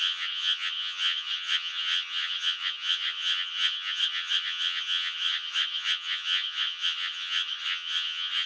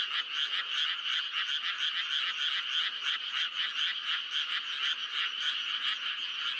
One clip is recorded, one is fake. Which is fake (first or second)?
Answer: first